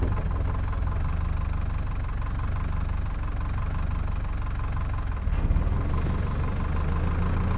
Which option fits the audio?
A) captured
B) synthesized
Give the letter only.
A